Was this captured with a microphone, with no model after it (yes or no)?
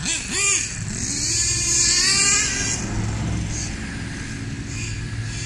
yes